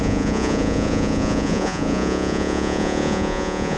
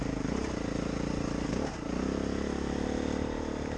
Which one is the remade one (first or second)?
first